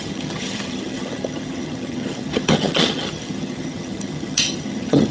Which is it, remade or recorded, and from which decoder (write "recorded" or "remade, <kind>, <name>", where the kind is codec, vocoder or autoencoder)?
remade, vocoder, HiFi-GAN